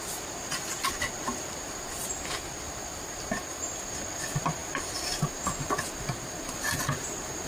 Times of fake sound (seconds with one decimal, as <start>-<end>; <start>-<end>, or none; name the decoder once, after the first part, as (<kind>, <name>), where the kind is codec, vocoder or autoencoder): 0.0-3.3 (vocoder, BigVGAN v2)